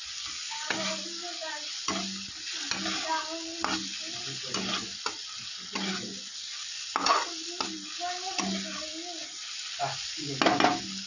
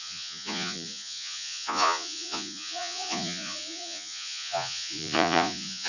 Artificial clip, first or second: second